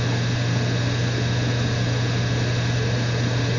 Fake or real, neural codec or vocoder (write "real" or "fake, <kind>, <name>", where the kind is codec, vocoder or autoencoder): real